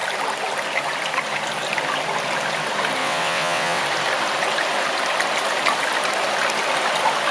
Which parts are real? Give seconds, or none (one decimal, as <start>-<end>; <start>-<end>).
0.0-3.0; 3.8-7.3